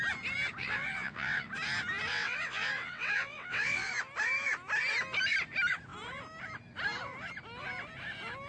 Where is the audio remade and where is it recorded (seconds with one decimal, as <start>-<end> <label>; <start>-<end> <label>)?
0.0-0.6 recorded; 0.6-1.5 remade; 1.5-2.1 recorded; 2.1-3.9 remade; 3.9-8.5 recorded